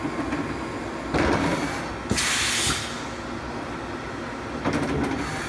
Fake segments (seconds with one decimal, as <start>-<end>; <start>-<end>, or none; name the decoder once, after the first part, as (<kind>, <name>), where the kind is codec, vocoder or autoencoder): none